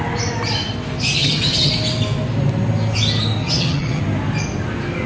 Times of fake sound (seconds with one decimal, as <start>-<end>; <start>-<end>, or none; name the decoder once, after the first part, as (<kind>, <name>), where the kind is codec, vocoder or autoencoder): 1.2-1.7 (vocoder, HiFi-GAN); 3.4-4.0